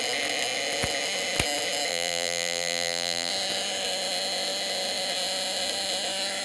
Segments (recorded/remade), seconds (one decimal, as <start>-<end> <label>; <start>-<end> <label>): 0.0-1.9 recorded; 1.9-3.3 remade; 3.3-6.4 recorded